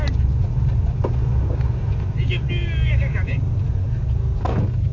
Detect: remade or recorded recorded